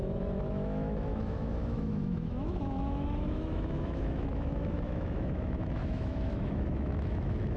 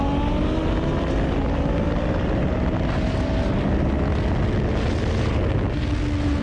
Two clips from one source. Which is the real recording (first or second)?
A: second